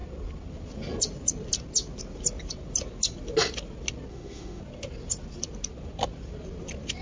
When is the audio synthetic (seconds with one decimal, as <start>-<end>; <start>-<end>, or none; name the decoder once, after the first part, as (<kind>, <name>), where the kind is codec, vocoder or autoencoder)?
4.1-4.6 (autoencoder, DAC-VAE)